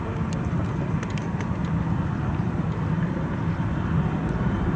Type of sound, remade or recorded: recorded